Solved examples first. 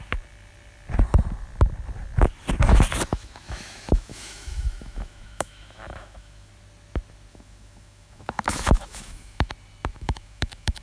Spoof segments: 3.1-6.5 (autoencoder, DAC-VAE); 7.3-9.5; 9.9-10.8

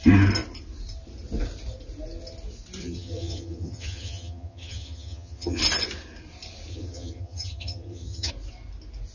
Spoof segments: 2.8-5.6 (vocoder, HiFi-GAN); 6.7-8.3